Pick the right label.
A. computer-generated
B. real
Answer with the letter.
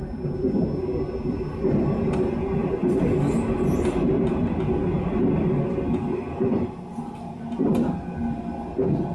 B